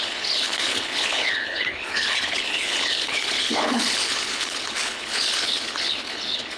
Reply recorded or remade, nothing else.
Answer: remade